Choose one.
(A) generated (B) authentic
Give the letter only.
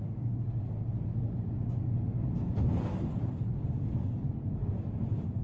B